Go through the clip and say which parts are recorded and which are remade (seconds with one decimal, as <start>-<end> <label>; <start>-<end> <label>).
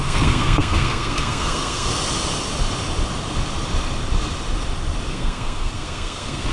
0.0-1.9 remade; 1.9-5.1 recorded; 5.1-6.5 remade